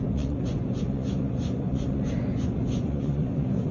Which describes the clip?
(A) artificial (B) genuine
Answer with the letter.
A